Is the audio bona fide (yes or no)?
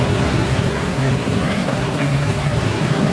no